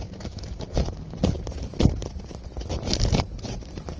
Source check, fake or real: real